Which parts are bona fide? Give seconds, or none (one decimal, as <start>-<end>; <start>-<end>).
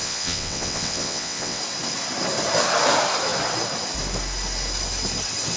1.6-5.6